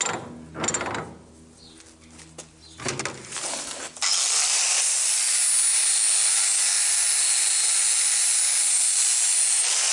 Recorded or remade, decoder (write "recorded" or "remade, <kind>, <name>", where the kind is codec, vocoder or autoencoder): recorded